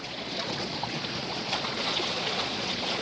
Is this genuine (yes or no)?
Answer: no